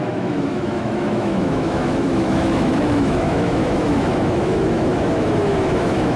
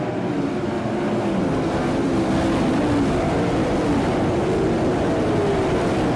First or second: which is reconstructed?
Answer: first